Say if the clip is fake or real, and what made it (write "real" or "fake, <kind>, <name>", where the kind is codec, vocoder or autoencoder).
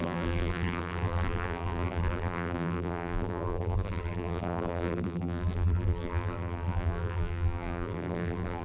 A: fake, vocoder, BigVGAN v2